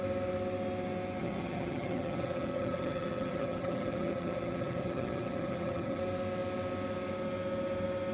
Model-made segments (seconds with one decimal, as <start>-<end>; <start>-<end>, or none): 1.2-6.0